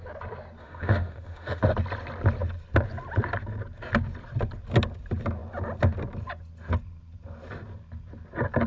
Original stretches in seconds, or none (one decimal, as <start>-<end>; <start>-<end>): 0.0-0.6; 1.6-8.7